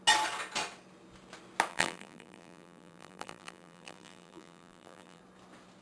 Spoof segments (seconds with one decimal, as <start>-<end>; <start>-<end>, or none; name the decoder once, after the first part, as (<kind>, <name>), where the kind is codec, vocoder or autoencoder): 1.7-5.2 (vocoder, BigVGAN v2)